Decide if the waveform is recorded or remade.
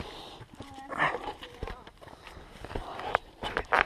remade